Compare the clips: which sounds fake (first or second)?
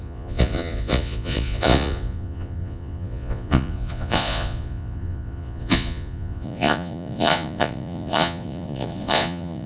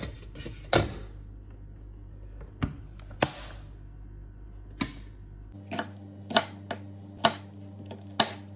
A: first